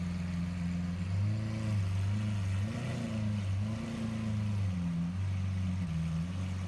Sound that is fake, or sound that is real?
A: real